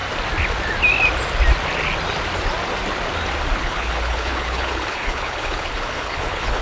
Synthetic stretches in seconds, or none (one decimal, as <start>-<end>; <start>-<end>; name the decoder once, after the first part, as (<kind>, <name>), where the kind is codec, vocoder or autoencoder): 3.6-6.6 (codec, HILCodec)